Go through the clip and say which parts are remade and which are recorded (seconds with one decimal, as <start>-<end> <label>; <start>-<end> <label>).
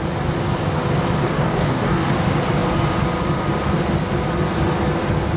0.0-1.2 recorded; 1.2-2.1 remade; 2.1-5.4 recorded